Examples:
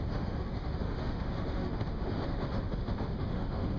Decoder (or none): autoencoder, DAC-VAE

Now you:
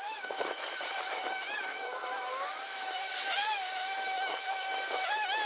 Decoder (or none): autoencoder, DAC-VAE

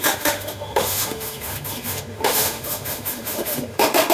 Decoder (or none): autoencoder, DAC-VAE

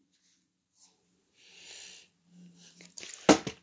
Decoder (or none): none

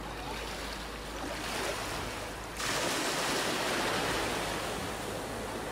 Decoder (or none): none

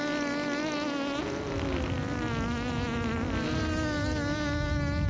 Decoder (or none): none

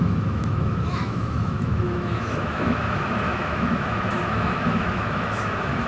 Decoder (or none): autoencoder, DAC-VAE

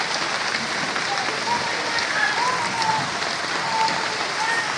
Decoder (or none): none